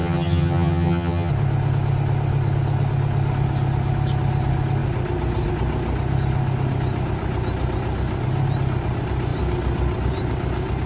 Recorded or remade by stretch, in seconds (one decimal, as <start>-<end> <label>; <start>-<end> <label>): 0.0-1.3 remade; 1.3-10.9 recorded